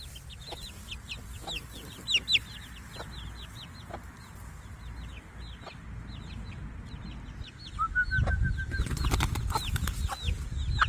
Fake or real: real